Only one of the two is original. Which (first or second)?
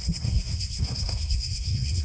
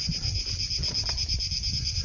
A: second